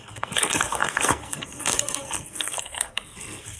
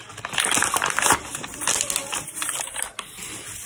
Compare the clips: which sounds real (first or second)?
second